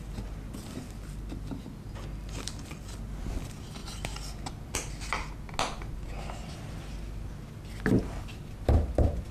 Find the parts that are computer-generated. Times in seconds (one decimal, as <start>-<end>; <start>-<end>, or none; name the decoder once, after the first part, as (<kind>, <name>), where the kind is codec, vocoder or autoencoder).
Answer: none